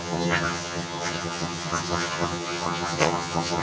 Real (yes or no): no